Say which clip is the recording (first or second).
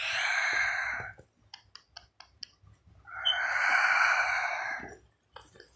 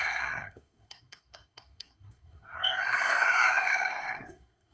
first